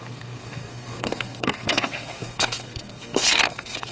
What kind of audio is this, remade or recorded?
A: remade